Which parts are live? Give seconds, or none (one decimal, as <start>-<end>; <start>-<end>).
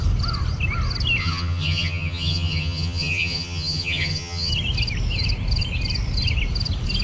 0.0-1.2; 4.5-7.0